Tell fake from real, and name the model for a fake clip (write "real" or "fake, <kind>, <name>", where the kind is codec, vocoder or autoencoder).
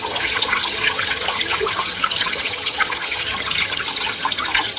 fake, vocoder, HiFi-GAN